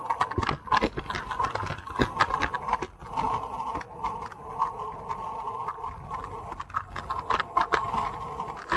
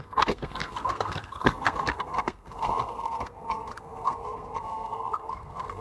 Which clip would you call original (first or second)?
first